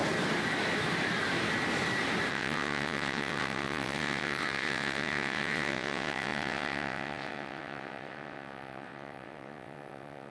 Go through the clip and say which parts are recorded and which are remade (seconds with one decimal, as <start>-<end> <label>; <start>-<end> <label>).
0.0-2.3 recorded; 2.3-10.3 remade